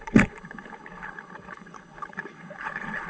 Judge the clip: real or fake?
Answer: fake